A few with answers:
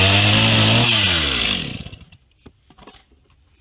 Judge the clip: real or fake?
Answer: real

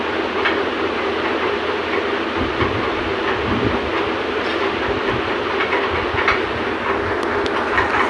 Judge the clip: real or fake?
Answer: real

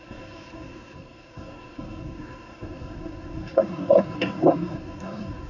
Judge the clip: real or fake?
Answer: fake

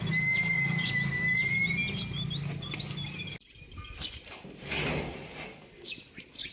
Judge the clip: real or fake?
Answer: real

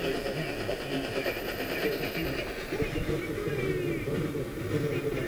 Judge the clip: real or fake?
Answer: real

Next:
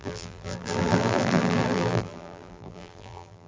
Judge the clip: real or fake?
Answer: fake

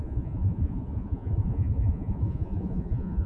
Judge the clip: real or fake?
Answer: fake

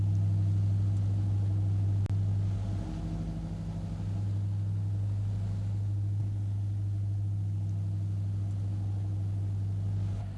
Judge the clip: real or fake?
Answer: real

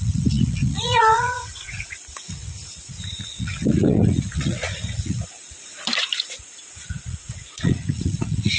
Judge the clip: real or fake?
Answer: fake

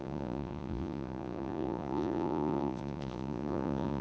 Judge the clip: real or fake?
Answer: fake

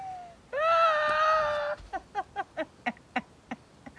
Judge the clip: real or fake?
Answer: real